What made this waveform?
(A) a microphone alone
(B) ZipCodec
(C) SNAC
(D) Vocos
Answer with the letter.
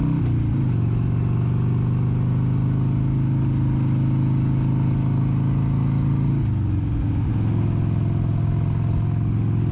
A